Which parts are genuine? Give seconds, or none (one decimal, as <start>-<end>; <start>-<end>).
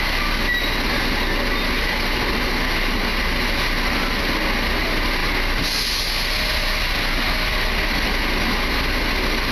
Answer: 0.0-9.5